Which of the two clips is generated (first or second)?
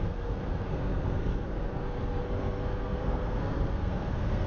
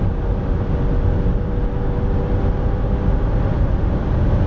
first